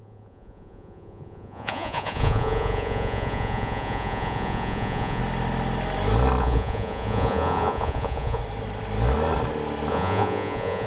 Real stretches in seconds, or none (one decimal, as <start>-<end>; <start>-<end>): 5.2-6.4; 8.4-9.9